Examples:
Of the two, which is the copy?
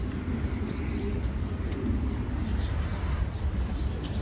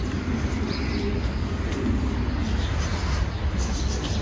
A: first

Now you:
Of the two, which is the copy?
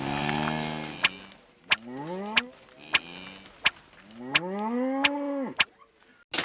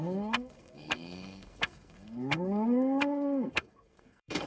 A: second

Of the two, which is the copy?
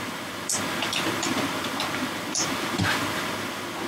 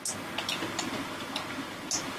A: first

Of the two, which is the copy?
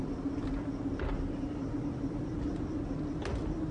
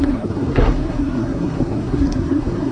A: second